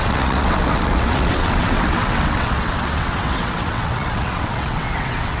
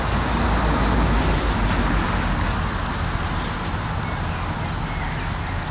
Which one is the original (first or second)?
second